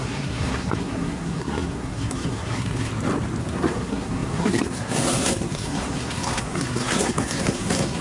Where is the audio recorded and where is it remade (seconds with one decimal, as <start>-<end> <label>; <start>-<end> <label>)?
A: 0.0-2.9 remade; 2.9-3.4 recorded; 3.4-8.0 remade